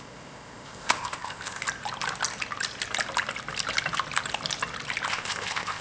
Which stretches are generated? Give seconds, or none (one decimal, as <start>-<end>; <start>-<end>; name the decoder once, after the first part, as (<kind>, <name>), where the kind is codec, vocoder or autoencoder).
0.0-1.6 (codec, ZipCodec); 5.1-5.8